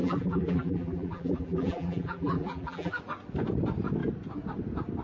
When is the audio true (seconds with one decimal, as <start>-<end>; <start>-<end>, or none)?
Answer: 3.0-5.0